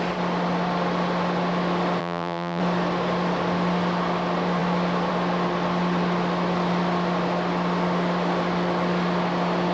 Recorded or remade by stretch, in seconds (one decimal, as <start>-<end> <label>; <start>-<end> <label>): 0.0-2.0 recorded; 2.0-2.6 remade; 2.6-9.7 recorded

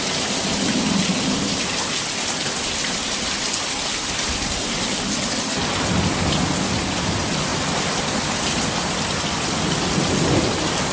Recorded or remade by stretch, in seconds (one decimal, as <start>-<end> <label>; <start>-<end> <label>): 0.0-10.9 recorded

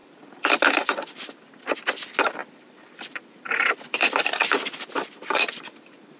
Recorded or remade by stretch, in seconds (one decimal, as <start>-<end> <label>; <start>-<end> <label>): 0.0-1.5 remade; 1.5-2.4 recorded; 2.4-6.2 remade

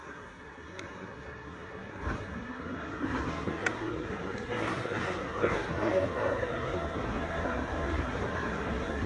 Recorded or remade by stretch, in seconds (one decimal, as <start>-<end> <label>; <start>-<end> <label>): 0.0-9.1 remade

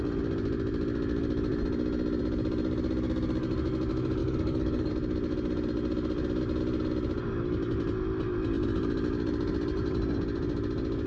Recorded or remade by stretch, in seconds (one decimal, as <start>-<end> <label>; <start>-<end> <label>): 0.0-4.2 recorded; 4.2-4.9 remade; 4.9-11.1 recorded

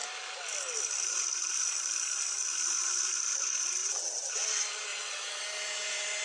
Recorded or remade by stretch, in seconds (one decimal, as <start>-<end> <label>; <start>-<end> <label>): 0.0-3.8 recorded; 3.8-4.5 remade; 4.5-4.9 recorded; 4.9-5.4 remade; 5.4-6.2 recorded